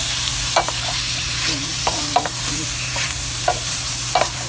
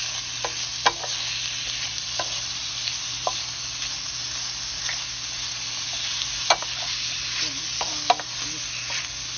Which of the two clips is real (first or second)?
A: second